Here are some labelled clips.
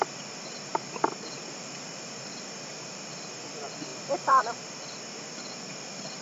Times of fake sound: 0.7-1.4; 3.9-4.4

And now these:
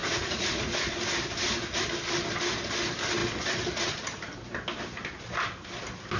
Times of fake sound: 0.0-0.6

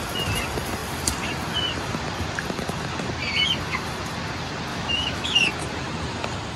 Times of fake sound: 4.7-5.4